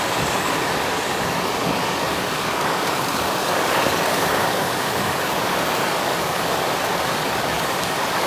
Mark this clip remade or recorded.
remade